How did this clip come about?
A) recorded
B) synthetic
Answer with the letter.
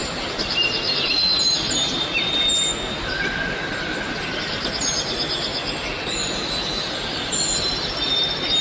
A